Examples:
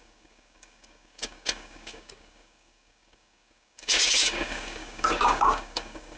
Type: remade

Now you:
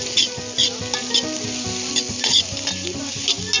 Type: recorded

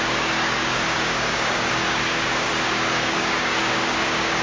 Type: remade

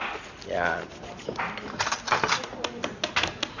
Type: recorded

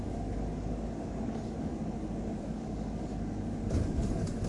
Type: remade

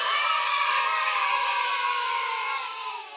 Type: remade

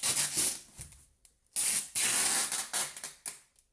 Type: recorded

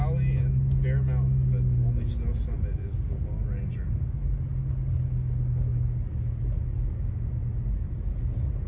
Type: recorded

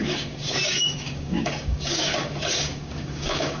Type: remade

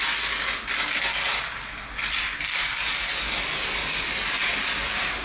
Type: recorded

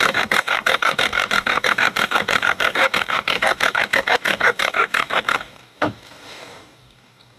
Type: remade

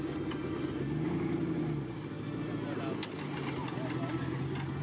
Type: recorded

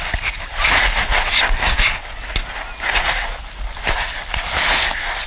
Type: recorded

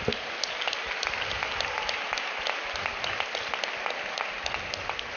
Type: recorded